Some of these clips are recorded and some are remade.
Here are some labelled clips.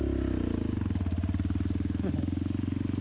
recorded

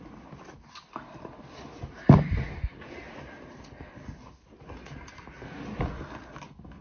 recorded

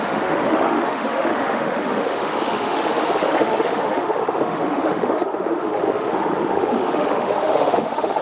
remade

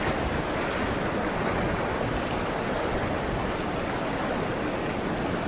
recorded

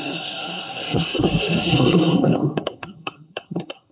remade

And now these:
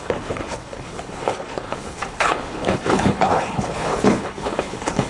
remade